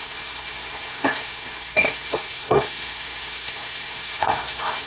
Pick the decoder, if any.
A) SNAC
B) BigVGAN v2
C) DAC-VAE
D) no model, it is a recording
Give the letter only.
A